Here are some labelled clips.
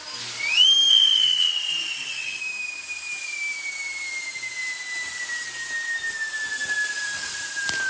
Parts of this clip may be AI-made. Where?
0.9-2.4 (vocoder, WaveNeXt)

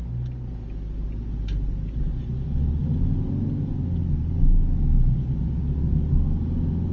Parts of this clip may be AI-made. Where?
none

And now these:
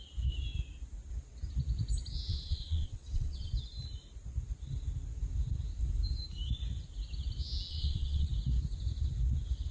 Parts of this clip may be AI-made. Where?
2.3-3.5 (vocoder, WaveNeXt); 7.7-8.3

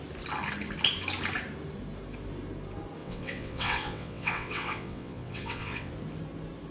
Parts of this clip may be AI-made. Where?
3.0-5.9 (vocoder, WaveNeXt)